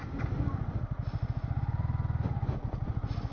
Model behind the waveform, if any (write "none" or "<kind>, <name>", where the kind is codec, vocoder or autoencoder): none